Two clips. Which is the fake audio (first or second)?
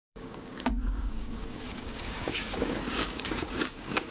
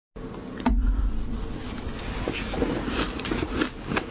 first